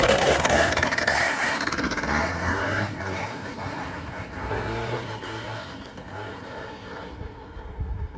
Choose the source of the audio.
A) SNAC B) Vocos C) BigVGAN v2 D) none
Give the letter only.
A